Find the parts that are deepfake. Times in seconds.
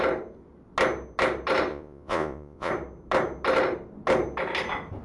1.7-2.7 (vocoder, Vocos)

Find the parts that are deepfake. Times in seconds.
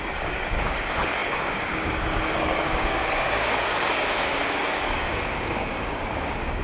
0.0-6.6 (codec, DAC)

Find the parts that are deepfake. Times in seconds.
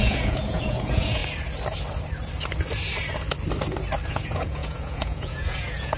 0.0-1.2 (vocoder, Vocos); 4.1-6.0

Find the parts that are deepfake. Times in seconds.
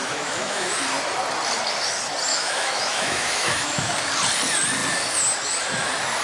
0.0-0.7 (autoencoder, DAC-VAE); 2.3-3.9